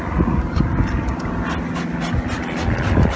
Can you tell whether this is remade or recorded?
recorded